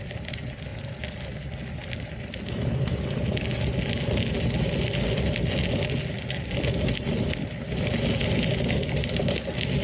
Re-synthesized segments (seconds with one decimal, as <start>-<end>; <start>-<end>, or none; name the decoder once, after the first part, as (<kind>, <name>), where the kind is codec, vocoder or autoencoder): none

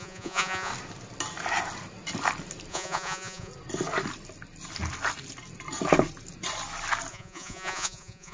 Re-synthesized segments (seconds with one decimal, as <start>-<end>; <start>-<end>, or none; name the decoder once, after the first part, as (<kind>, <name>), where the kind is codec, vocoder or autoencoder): 0.0-0.7 (vocoder, Vocos); 2.7-3.5; 7.1-8.3

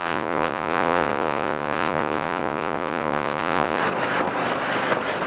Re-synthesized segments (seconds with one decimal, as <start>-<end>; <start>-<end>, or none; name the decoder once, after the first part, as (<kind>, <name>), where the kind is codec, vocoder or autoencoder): 0.0-3.8 (vocoder, Vocos)